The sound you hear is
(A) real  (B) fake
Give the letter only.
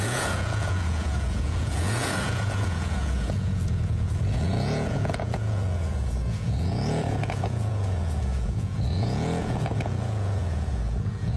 B